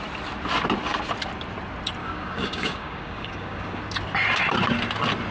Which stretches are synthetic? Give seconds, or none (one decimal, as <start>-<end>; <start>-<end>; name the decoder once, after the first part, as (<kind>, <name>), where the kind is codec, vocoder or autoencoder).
2.0-3.8 (codec, DAC)